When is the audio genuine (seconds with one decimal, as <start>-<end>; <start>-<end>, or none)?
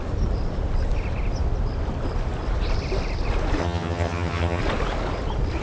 0.0-3.6; 4.6-5.6